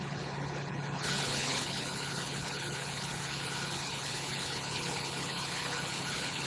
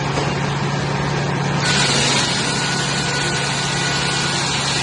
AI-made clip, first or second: first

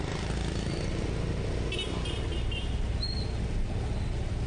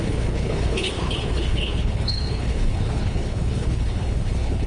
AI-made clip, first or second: second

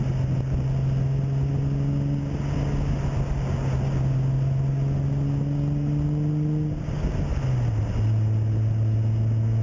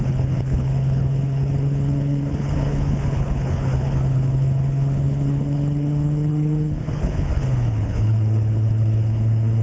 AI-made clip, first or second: second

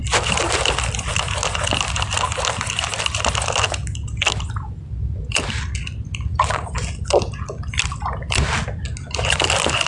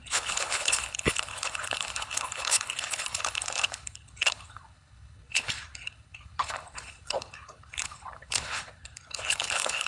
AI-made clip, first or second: second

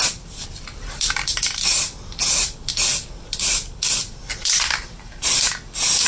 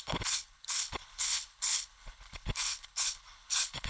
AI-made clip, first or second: second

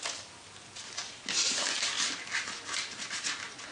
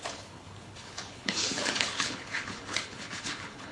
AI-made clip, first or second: second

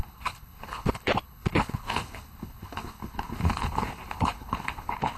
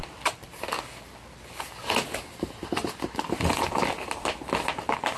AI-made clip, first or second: first